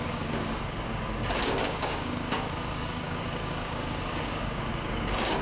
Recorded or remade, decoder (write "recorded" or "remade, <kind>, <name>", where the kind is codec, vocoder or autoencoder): remade, codec, DAC